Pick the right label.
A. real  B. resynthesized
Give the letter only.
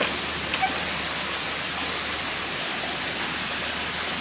A